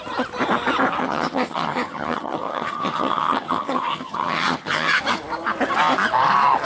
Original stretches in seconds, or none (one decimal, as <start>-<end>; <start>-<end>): 0.0-1.0; 5.0-6.6